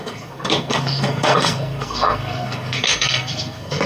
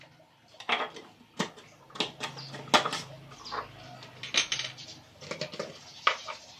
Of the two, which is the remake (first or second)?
first